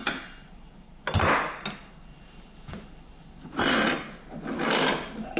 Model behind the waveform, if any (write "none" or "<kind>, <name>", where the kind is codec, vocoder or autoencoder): none